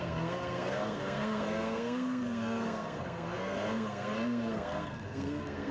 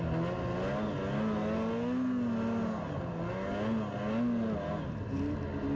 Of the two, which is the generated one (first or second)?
first